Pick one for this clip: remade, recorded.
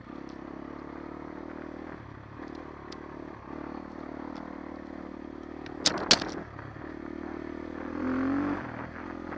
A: recorded